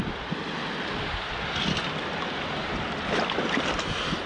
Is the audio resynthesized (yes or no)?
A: no